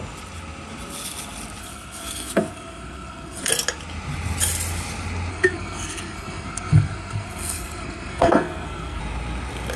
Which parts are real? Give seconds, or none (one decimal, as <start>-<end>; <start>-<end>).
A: 0.0-1.6; 3.5-5.3; 9.0-9.8